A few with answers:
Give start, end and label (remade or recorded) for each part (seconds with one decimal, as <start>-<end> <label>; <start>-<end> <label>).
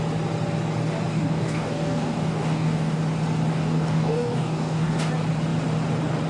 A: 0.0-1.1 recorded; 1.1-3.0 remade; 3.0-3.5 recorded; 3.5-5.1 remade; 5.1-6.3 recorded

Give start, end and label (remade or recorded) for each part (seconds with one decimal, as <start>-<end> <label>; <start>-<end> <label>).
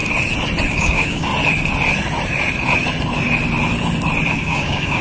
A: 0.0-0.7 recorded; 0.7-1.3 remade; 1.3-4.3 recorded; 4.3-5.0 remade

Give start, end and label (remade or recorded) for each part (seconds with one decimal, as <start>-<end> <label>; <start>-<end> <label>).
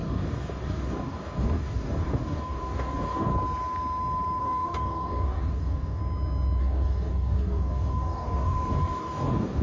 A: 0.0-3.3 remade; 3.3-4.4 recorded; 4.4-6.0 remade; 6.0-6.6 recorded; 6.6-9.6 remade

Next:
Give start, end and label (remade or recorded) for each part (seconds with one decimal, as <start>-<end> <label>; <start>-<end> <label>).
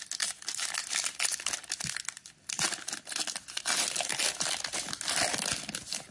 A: 0.0-6.1 recorded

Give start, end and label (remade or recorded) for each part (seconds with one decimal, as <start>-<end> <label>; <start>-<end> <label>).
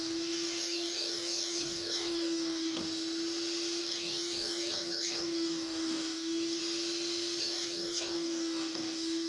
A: 0.0-2.8 remade; 2.8-3.8 recorded; 3.8-6.6 remade; 6.6-7.4 recorded; 7.4-9.3 remade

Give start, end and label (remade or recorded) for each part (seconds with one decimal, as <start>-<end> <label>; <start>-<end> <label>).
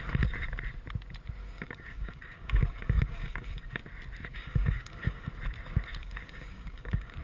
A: 0.0-1.4 recorded; 1.4-3.8 remade; 3.8-4.3 recorded; 4.3-5.3 remade; 5.3-6.0 recorded; 6.0-7.2 remade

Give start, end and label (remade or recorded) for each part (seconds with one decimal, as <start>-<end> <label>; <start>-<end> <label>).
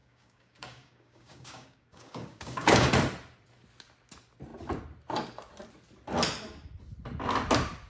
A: 0.0-2.9 remade; 2.9-7.9 recorded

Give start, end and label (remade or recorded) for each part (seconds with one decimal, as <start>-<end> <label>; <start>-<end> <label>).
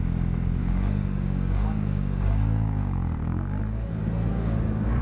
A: 0.0-0.6 recorded; 0.6-3.6 remade; 3.6-4.3 recorded; 4.3-5.0 remade